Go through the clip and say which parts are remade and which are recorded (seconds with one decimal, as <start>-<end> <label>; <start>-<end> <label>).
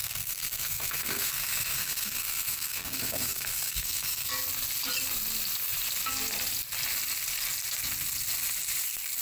0.0-4.3 remade; 4.3-9.2 recorded